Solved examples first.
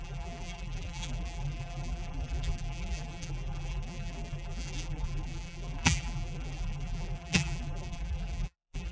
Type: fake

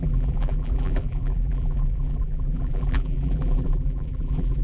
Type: fake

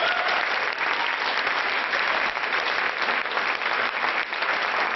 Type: fake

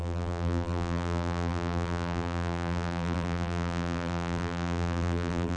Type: fake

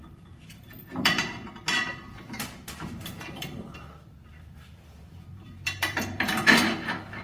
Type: fake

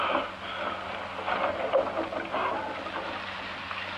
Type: real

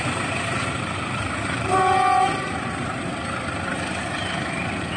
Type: fake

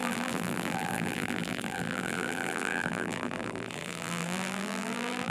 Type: fake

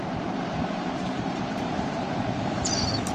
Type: fake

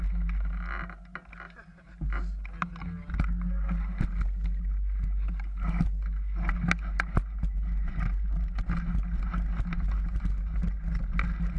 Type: real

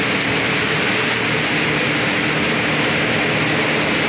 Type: real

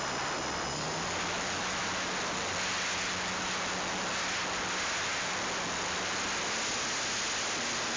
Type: real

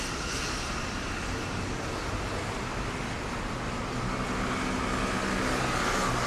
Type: real